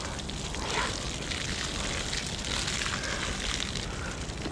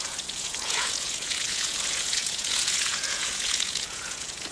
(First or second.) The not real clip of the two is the second